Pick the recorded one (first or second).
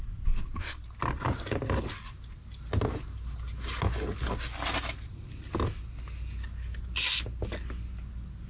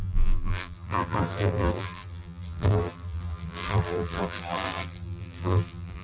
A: first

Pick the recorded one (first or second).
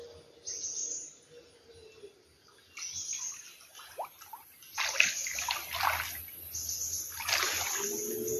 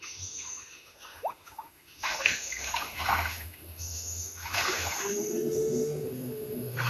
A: first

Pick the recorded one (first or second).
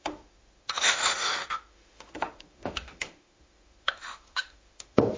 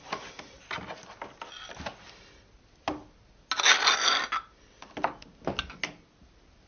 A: second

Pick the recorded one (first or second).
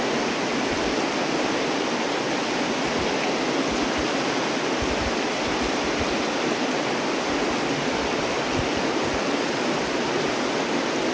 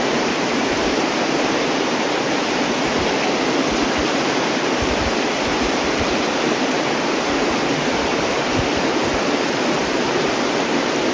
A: first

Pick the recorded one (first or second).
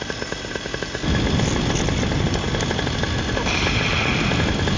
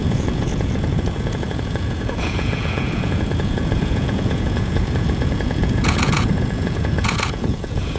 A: first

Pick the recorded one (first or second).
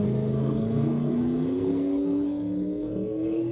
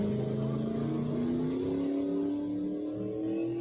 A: second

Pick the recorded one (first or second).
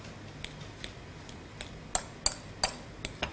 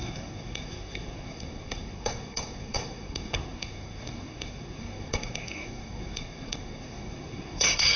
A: first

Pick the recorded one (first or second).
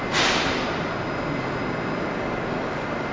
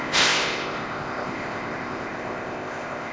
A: first